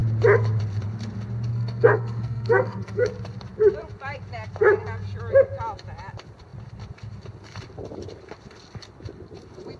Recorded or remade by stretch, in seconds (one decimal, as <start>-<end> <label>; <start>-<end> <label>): 0.0-1.5 recorded; 1.5-3.1 remade; 3.1-9.8 recorded